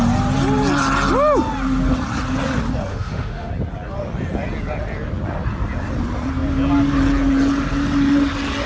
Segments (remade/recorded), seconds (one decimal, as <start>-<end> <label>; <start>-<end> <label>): 0.0-2.9 recorded; 2.9-3.5 remade; 3.5-8.7 recorded